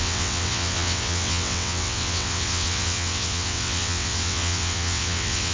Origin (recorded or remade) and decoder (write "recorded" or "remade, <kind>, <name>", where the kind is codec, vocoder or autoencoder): remade, vocoder, WaveNeXt